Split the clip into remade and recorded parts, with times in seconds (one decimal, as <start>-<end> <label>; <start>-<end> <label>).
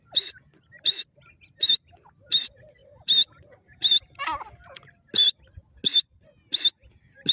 0.0-2.8 recorded; 2.8-4.2 remade; 4.2-7.3 recorded